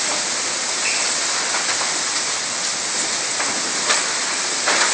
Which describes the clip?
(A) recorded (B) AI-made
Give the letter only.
A